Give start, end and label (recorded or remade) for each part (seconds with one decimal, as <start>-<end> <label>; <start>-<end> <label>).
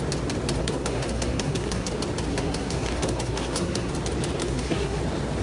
0.0-0.6 recorded; 0.6-1.9 remade; 1.9-2.3 recorded; 2.3-3.9 remade; 3.9-4.4 recorded; 4.4-5.0 remade; 5.0-5.4 recorded